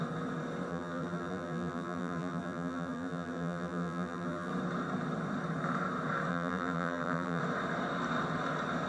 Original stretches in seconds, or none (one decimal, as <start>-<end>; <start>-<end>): 0.0-0.7; 4.5-6.3; 7.4-8.9